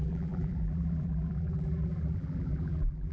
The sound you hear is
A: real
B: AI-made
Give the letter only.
B